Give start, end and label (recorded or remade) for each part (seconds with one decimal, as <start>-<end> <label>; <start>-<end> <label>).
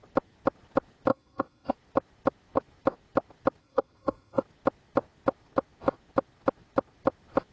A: 0.0-1.1 recorded; 1.1-1.7 remade; 1.7-3.6 recorded; 3.6-4.4 remade; 4.4-7.5 recorded